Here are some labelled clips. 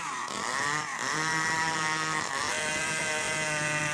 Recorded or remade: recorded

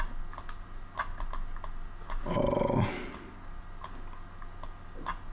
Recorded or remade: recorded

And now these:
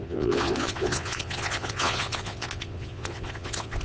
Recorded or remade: remade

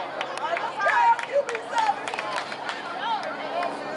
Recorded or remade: recorded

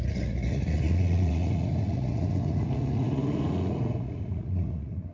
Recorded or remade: remade